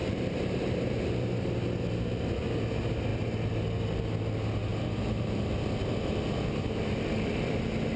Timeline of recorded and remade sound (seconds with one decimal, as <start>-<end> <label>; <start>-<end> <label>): 0.0-1.1 remade; 1.1-4.7 recorded; 4.7-5.5 remade; 5.5-8.0 recorded